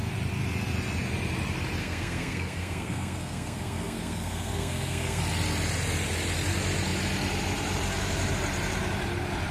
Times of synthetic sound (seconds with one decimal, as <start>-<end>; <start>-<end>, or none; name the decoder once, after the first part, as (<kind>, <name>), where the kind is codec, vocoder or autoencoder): 1.8-5.2 (codec, SNAC)